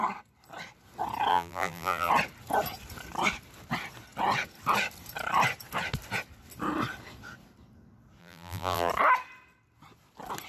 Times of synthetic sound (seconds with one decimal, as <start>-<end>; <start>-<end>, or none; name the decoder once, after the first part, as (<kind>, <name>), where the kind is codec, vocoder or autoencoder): 1.3-2.1 (vocoder, BigVGAN v2); 8.2-8.9